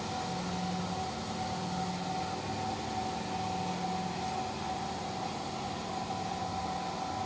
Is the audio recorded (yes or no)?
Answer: yes